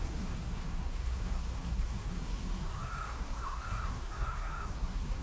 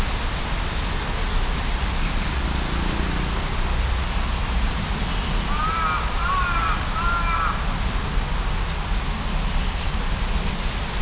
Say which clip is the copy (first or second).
first